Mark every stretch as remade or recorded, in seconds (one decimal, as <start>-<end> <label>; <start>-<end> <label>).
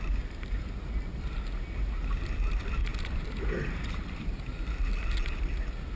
0.0-2.9 recorded; 2.9-4.7 remade; 4.7-6.0 recorded